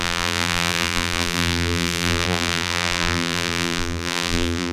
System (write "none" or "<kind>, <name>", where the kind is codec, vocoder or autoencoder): vocoder, BigVGAN v2